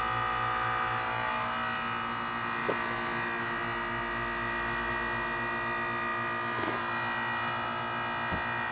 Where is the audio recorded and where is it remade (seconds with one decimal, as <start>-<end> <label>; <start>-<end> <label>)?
0.0-2.6 recorded; 2.6-4.9 remade; 4.9-8.7 recorded